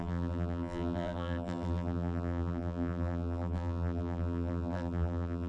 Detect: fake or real fake